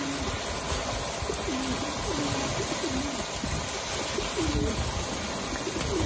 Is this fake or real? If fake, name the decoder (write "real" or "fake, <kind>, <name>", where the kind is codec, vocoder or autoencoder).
real